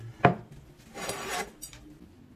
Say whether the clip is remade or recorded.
recorded